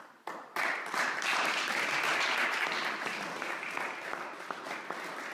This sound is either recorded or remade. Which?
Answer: recorded